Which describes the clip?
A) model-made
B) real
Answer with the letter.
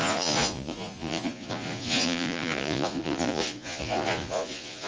A